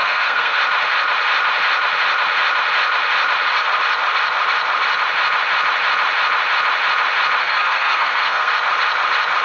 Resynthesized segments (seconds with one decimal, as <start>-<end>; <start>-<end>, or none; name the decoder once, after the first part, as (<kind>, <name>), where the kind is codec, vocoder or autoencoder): 0.0-0.6 (codec, SNAC); 7.4-8.5